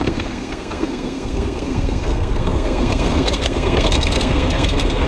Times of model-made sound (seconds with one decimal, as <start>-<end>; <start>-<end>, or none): 0.0-5.1